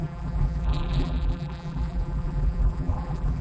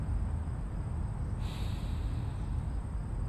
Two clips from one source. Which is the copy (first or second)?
first